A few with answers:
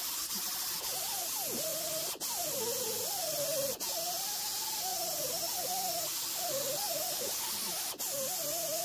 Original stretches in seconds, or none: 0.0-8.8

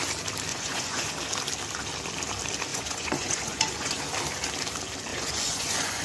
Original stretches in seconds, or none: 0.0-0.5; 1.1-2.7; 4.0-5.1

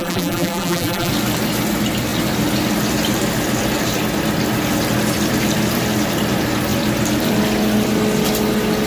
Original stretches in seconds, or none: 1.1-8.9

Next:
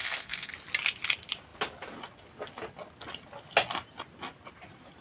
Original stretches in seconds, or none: 0.5-5.0